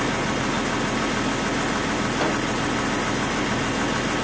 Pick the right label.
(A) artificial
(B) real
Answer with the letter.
B